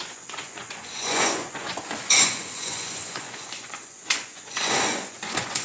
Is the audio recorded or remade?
remade